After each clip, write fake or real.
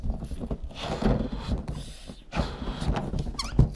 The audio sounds real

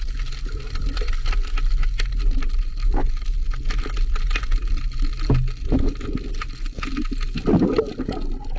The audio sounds real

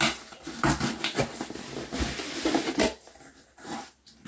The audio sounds real